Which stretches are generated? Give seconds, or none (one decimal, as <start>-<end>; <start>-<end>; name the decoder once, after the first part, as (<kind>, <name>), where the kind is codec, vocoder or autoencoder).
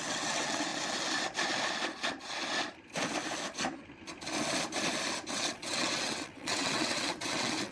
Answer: 0.0-0.7 (vocoder, WaveNeXt); 5.3-7.7